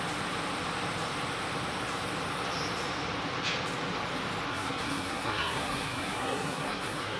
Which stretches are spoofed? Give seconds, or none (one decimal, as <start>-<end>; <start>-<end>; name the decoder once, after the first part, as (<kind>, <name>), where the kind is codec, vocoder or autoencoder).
4.5-7.2 (codec, SNAC)